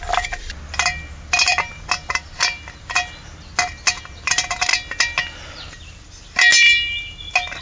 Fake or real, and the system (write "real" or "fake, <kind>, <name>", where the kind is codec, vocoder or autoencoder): real